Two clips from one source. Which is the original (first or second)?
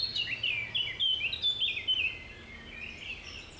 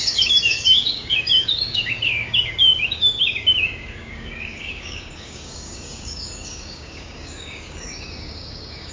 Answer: first